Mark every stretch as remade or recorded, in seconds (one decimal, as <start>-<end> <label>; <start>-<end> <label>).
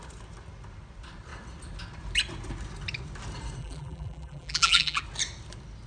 0.0-3.6 recorded; 3.6-5.0 remade; 5.0-5.9 recorded